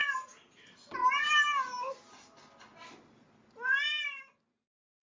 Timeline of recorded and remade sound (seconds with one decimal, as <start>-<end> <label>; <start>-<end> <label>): 0.0-0.6 recorded; 0.6-1.0 remade; 1.0-3.9 recorded; 3.9-5.0 remade

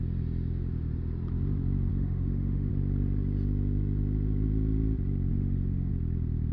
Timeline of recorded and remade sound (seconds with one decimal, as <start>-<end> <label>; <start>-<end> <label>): 0.0-1.9 recorded; 1.9-2.7 remade; 2.7-5.3 recorded; 5.3-5.9 remade; 5.9-6.5 recorded

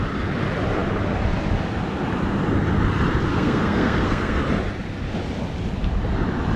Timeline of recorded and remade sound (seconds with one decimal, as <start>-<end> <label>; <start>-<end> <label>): 0.0-3.3 recorded; 3.3-4.4 remade; 4.4-6.6 recorded